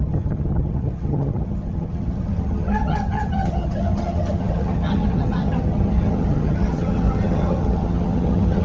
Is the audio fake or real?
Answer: fake